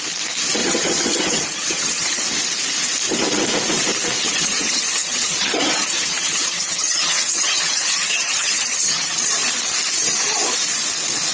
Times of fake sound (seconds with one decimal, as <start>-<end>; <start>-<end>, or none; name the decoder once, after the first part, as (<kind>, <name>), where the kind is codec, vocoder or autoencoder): 0.6-2.2 (vocoder, HiFi-GAN); 4.2-9.2